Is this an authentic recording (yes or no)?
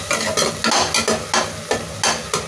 yes